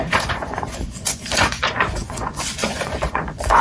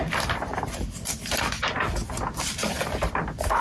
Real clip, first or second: second